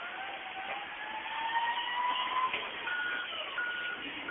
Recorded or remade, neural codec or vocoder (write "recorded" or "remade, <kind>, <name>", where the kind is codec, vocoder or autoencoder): recorded